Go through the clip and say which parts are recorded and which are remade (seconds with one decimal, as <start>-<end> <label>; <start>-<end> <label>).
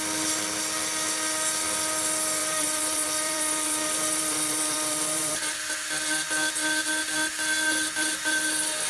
0.0-2.4 recorded; 2.4-5.4 remade; 5.4-8.9 recorded